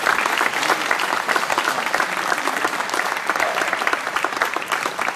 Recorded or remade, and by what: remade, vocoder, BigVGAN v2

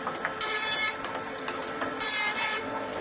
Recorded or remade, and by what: remade, vocoder, BigVGAN v2